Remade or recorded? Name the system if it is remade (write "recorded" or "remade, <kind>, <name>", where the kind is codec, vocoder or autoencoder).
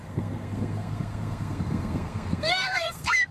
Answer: remade, codec, SNAC